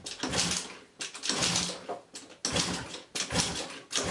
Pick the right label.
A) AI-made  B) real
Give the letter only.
B